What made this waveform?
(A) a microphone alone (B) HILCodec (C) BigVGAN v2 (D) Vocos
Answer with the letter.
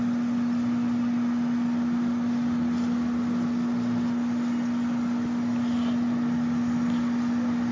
A